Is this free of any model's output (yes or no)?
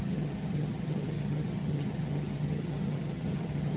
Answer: no